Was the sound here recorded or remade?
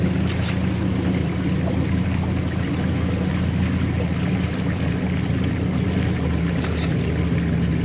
recorded